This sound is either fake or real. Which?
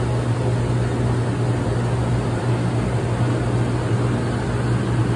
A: real